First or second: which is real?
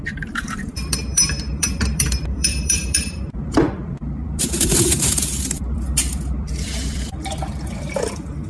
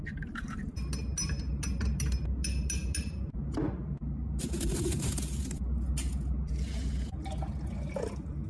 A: second